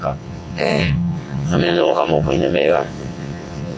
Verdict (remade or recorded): remade